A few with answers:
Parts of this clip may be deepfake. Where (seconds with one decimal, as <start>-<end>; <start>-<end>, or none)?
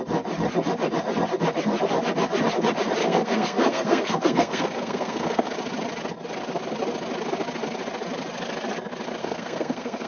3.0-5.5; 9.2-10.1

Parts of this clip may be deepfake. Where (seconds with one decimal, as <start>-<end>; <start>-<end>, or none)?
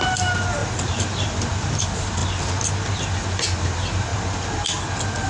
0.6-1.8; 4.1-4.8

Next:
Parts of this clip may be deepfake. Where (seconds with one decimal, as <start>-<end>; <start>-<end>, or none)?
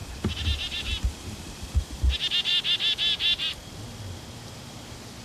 none